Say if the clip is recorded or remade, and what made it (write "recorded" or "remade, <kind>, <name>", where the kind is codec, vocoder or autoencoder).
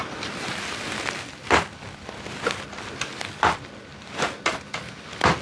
recorded